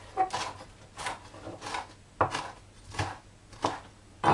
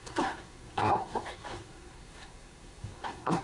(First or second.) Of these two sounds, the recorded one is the first